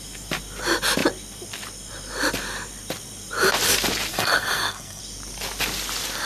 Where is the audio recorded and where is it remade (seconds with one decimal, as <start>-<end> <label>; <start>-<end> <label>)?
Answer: 0.0-4.1 recorded; 4.1-5.0 remade; 5.0-6.3 recorded